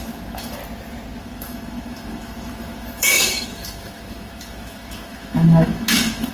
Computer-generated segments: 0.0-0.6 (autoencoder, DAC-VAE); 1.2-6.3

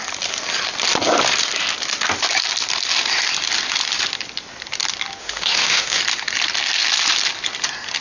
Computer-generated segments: 5.2-6.0 (autoencoder, DAC-VAE)

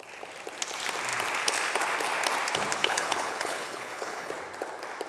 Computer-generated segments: 2.8-4.3 (codec, HILCodec)

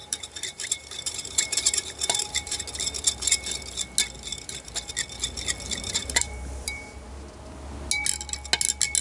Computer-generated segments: 0.0-2.6 (vocoder, BigVGAN v2); 4.3-4.9; 6.0-7.1